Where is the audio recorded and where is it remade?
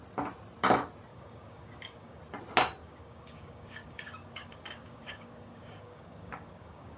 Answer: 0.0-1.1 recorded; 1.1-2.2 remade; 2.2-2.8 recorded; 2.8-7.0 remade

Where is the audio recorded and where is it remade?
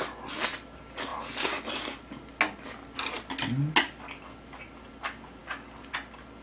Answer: 0.0-5.4 recorded; 5.4-5.9 remade; 5.9-6.4 recorded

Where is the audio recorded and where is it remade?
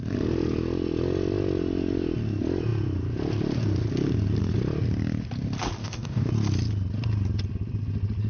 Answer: 0.0-5.8 recorded; 5.8-6.3 remade; 6.3-8.3 recorded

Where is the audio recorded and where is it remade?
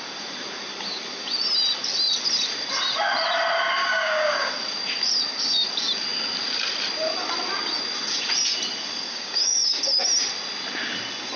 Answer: 0.0-3.8 recorded; 3.8-4.5 remade; 4.5-9.1 recorded; 9.1-9.8 remade; 9.8-11.4 recorded